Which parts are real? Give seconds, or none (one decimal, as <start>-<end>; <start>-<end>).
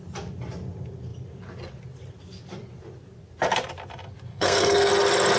0.0-4.3; 4.9-5.4